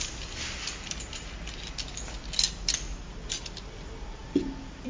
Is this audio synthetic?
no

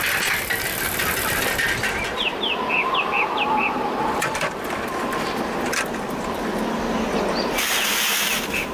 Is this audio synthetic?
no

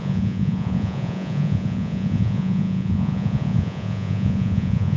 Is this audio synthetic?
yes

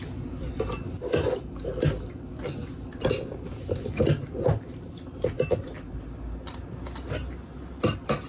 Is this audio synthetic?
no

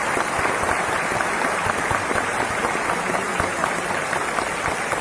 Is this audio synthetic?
no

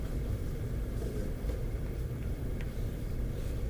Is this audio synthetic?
yes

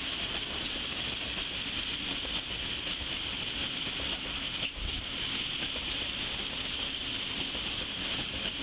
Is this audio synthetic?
no